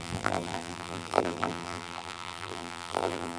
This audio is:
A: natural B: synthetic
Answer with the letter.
B